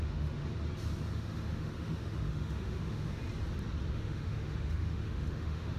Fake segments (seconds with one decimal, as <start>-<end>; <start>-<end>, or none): 0.0-0.4; 1.1-3.2; 3.9-5.8